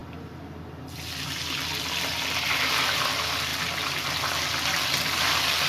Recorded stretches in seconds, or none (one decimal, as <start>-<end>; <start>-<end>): 0.0-5.7